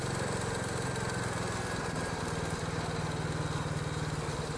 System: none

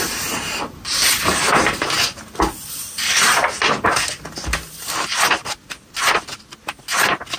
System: none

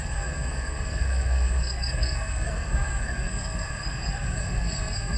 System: codec, SNAC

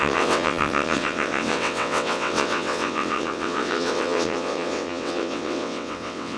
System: vocoder, WaveNeXt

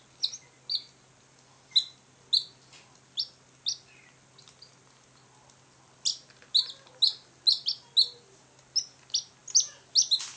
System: none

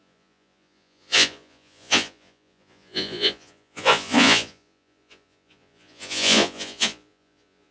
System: vocoder, Vocos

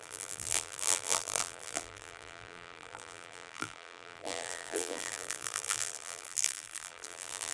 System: vocoder, BigVGAN v2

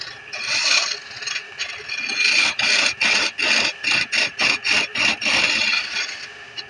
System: none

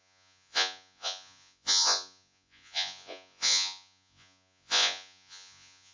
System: vocoder, Vocos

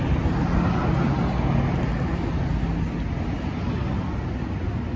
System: none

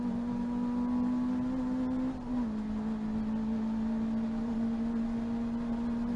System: none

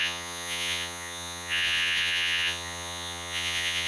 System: vocoder, Vocos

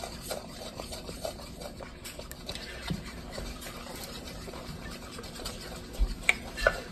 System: vocoder, BigVGAN v2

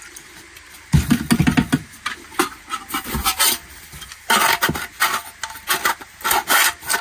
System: none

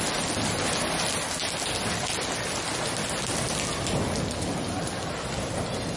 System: none